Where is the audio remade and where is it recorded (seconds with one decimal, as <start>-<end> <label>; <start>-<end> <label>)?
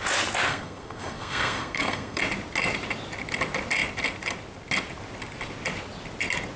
0.0-0.5 recorded; 0.5-2.2 remade; 2.2-6.6 recorded